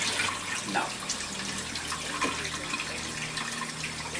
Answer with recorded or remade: recorded